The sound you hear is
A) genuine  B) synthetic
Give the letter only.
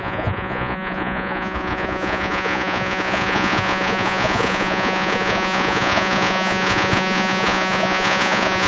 B